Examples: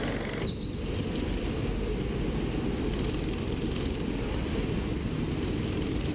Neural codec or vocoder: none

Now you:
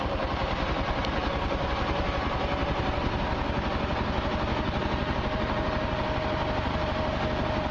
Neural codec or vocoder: none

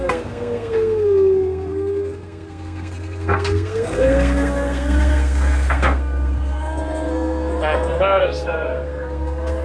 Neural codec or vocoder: codec, SNAC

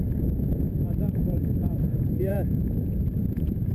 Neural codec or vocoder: vocoder, Vocos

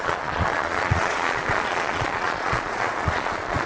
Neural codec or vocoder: vocoder, Vocos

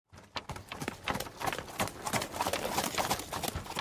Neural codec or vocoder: none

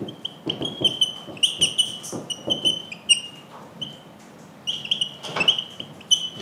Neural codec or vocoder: none